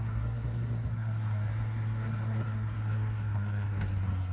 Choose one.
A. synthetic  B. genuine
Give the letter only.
A